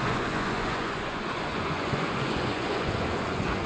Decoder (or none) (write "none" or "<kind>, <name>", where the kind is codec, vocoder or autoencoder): vocoder, Vocos